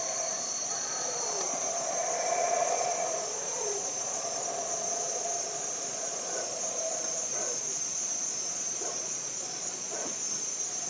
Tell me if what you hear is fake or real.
fake